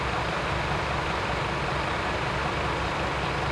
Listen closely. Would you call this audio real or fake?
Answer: real